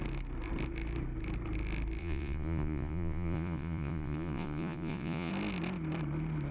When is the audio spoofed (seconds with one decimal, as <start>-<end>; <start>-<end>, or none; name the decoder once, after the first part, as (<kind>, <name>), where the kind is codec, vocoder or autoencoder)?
2.0-5.3 (vocoder, Vocos)